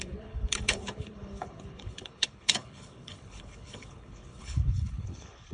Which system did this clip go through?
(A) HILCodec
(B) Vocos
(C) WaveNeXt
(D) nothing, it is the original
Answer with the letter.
A